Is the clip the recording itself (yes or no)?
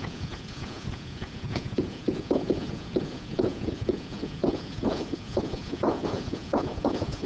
no